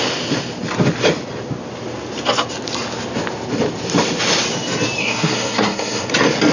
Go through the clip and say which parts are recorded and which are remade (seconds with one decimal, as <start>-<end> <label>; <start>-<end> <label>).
0.0-5.0 recorded; 5.0-6.1 remade; 6.1-6.5 recorded